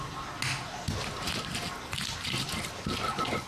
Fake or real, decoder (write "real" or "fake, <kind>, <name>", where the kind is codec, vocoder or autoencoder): real